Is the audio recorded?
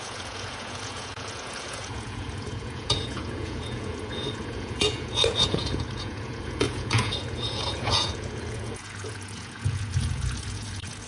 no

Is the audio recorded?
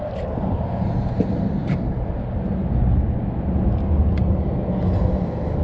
yes